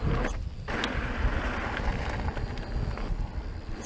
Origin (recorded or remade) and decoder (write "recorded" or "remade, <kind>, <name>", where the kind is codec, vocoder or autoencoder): recorded